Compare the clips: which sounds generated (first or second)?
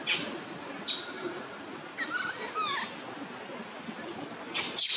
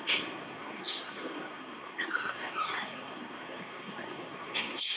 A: second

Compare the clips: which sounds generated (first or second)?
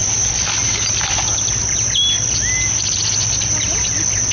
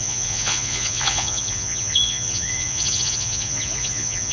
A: second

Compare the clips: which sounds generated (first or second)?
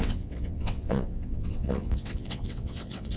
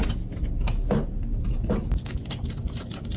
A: first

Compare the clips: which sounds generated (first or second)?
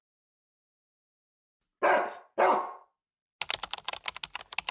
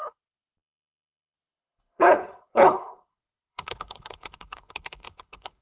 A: second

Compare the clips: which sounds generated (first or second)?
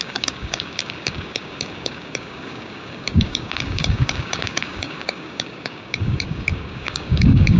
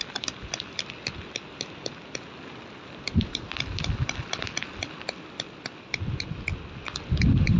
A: first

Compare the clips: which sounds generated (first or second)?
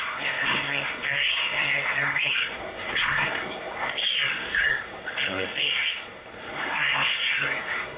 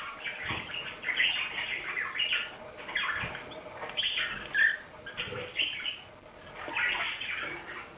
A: first